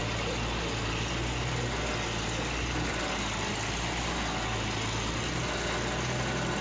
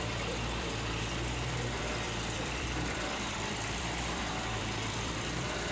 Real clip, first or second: first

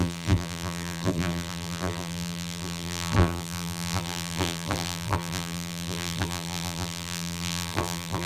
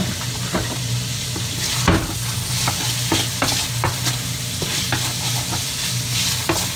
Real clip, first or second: second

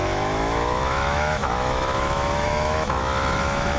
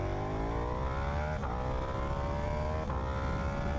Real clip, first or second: second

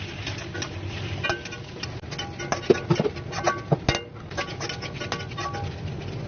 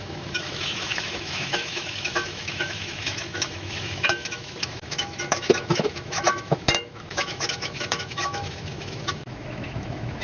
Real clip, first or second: first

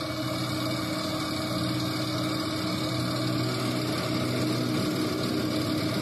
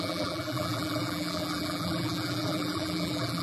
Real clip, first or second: first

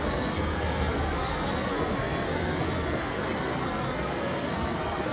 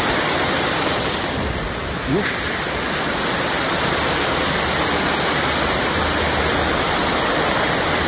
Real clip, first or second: second